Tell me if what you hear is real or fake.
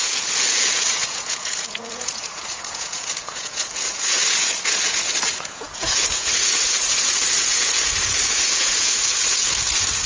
fake